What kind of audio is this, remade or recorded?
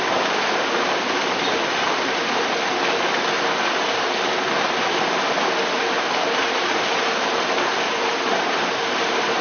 recorded